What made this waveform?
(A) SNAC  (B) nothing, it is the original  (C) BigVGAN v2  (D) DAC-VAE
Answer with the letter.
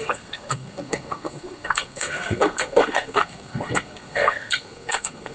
A